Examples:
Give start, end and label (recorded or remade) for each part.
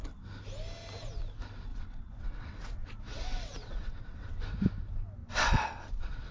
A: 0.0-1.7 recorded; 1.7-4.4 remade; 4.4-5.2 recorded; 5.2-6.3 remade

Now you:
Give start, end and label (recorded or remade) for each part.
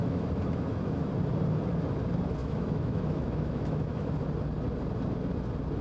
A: 0.0-1.1 remade; 1.1-2.4 recorded; 2.4-4.1 remade; 4.1-5.8 recorded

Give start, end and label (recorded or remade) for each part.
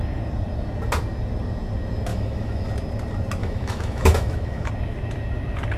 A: 0.0-2.1 recorded; 2.1-2.7 remade; 2.7-3.4 recorded; 3.4-4.7 remade; 4.7-5.8 recorded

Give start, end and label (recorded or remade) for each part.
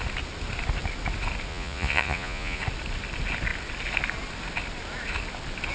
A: 0.0-1.5 recorded; 1.5-2.6 remade; 2.6-5.7 recorded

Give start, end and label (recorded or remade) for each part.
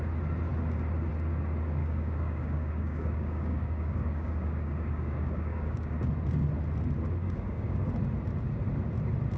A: 0.0-1.8 recorded; 1.8-6.1 remade; 6.1-7.2 recorded; 7.2-7.9 remade; 7.9-9.4 recorded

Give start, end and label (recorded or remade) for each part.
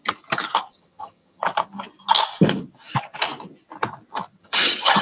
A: 0.0-0.7 recorded; 0.7-1.4 remade; 1.4-4.4 recorded; 4.4-5.0 remade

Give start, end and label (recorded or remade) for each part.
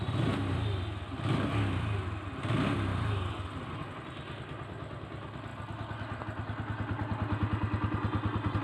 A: 0.0-8.6 recorded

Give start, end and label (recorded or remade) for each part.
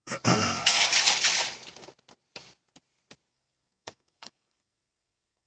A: 0.0-0.9 remade; 0.9-3.3 recorded; 3.3-5.5 remade